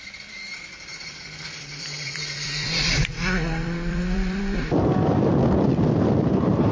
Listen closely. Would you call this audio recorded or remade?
remade